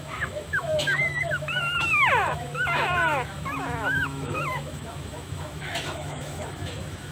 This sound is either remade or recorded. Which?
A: remade